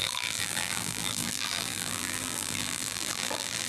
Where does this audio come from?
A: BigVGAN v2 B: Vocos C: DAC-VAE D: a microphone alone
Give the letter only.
A